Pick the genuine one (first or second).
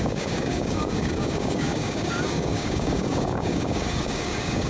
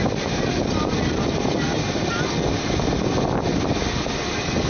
second